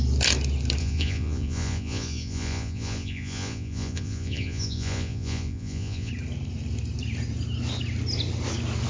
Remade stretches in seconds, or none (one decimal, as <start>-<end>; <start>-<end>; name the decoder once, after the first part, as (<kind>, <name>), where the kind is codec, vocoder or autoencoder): 0.8-6.1 (vocoder, Vocos)